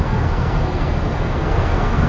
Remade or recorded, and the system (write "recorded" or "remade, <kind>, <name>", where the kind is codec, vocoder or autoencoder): remade, codec, SNAC